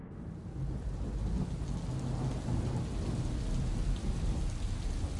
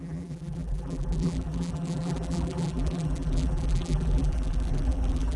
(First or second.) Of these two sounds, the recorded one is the first